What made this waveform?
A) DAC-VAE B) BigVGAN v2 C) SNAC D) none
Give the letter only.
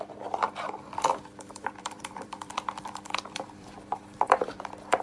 B